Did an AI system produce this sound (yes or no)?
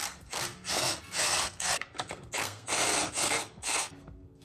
yes